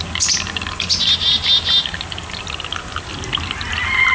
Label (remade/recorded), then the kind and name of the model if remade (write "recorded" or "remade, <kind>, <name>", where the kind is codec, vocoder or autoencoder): recorded